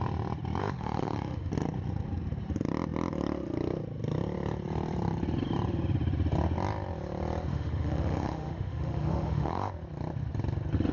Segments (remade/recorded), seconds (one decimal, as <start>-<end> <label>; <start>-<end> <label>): 0.0-0.6 recorded; 0.6-1.5 remade; 1.5-7.5 recorded; 7.5-9.7 remade; 9.7-10.9 recorded